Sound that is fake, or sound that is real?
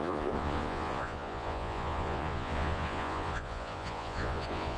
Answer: fake